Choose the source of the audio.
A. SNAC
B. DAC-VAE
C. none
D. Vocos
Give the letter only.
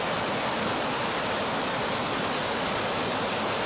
C